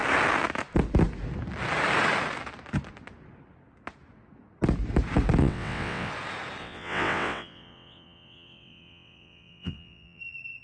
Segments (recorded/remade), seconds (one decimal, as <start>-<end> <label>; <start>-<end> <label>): 0.0-5.4 recorded; 5.4-6.1 remade; 6.1-6.6 recorded; 6.6-10.2 remade; 10.2-10.6 recorded